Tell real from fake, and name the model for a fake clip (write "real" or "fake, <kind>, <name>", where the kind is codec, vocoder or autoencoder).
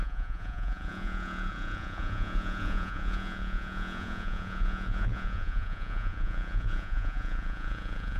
fake, vocoder, Vocos